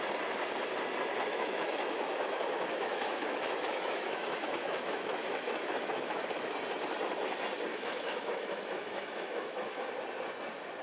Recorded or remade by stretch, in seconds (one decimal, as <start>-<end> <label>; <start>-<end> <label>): 0.0-1.3 recorded; 1.3-6.5 remade; 6.5-7.7 recorded; 7.7-9.9 remade; 9.9-10.8 recorded